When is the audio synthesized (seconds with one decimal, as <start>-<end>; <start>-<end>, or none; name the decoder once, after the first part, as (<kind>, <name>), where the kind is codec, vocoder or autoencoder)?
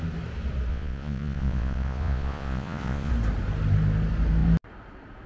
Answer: 0.7-3.1 (vocoder, Vocos)